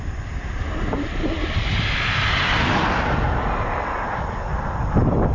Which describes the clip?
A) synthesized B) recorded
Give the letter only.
B